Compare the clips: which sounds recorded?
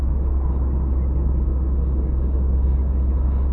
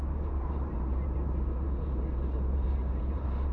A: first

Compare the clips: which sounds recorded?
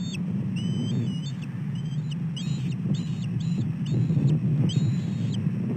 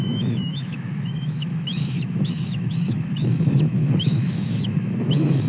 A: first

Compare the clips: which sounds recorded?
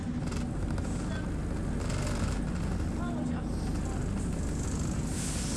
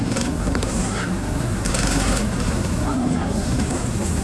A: first